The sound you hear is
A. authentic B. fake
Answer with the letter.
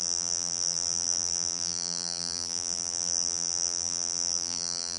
B